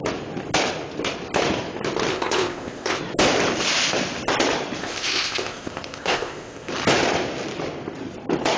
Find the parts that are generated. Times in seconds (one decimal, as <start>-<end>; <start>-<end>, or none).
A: 2.1-3.0; 4.8-6.7